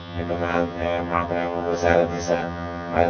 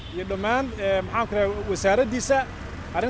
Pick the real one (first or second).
second